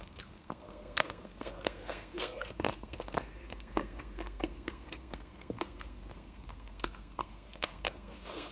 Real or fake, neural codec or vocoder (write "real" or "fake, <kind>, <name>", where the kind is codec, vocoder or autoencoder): fake, codec, SNAC